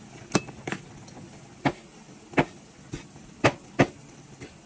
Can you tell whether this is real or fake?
real